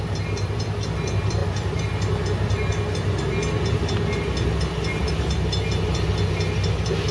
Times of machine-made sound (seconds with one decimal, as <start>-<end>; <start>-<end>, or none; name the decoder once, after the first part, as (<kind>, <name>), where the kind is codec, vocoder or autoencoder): none